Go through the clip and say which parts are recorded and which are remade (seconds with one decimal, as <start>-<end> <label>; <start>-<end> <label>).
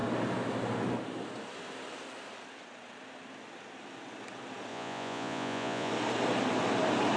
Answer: 0.0-4.7 recorded; 4.7-5.9 remade; 5.9-7.2 recorded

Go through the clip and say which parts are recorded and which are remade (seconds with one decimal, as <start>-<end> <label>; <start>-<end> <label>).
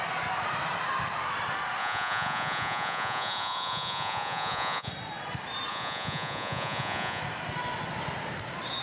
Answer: 0.0-1.8 recorded; 1.8-4.9 remade; 4.9-5.7 recorded; 5.7-7.2 remade; 7.2-8.8 recorded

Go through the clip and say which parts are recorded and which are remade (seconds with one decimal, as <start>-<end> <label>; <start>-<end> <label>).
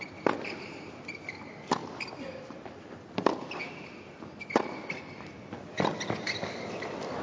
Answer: 0.0-7.2 recorded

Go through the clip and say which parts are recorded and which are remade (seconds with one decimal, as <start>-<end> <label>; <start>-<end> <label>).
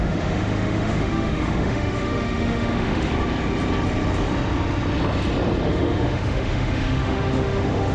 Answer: 0.0-3.1 remade; 3.1-5.6 recorded; 5.6-7.9 remade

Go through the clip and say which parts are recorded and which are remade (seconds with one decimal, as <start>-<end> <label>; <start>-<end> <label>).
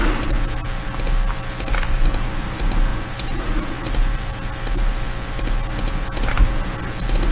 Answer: 0.0-2.9 recorded; 2.9-3.7 remade; 3.7-7.3 recorded